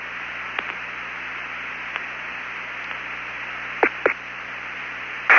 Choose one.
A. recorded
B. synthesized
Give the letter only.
A